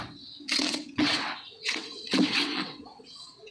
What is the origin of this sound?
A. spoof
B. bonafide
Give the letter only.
A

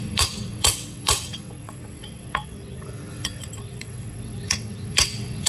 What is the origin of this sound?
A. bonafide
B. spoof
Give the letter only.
B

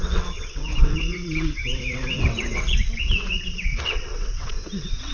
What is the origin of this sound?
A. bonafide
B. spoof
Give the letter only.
B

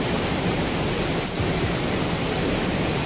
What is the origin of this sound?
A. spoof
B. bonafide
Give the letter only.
B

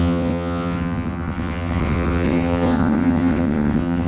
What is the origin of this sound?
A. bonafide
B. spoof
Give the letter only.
B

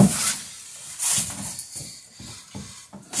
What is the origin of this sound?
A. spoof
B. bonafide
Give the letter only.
B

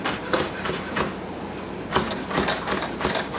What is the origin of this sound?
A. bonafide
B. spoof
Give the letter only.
A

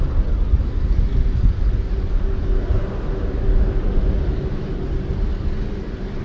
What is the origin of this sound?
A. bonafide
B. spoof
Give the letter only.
A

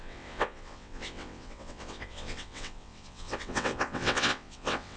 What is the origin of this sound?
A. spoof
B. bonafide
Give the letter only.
A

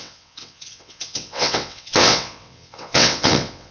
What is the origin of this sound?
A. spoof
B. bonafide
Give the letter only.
A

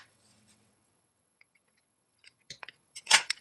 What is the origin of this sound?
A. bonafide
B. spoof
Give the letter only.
B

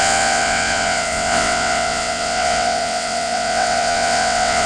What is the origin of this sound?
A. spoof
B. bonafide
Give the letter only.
A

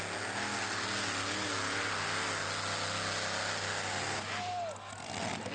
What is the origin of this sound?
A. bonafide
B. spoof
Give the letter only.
A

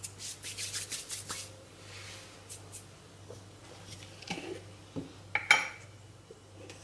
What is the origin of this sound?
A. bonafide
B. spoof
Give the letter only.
A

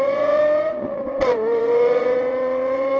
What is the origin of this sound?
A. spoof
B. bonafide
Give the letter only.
A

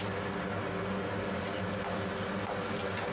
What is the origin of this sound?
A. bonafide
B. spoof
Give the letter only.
A